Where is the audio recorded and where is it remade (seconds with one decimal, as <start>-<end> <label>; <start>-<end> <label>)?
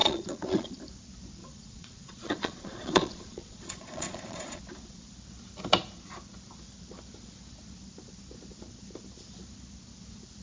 0.0-0.8 remade; 0.8-1.4 recorded; 1.4-4.6 remade; 4.6-10.4 recorded